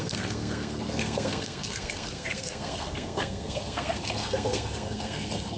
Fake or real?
fake